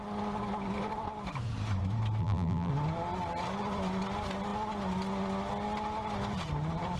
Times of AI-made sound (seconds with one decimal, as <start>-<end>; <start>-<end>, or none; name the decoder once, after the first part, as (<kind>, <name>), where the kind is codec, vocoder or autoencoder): 2.2-2.7 (vocoder, BigVGAN v2)